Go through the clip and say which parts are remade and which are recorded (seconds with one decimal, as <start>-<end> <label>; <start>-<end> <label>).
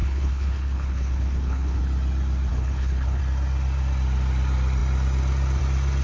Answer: 0.0-1.8 remade; 1.8-2.5 recorded; 2.5-3.2 remade; 3.2-6.0 recorded